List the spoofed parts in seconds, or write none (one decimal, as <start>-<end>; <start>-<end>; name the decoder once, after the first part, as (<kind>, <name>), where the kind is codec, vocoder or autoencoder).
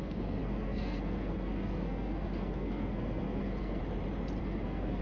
0.0-3.8 (codec, SNAC); 4.4-5.0